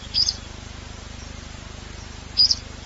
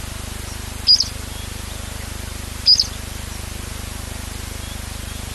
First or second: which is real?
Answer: second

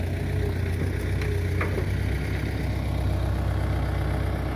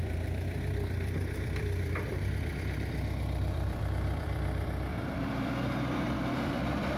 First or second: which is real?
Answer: first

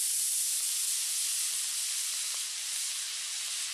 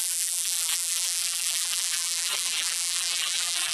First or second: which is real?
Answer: first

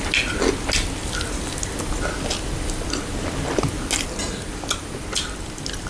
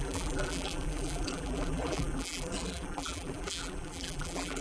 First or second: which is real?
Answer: first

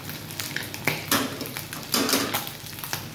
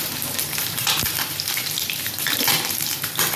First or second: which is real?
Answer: first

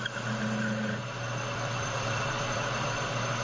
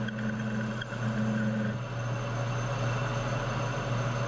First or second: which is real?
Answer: second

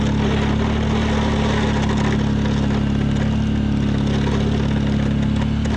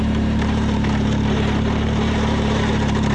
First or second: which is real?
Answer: first